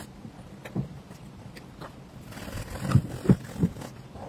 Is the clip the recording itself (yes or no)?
yes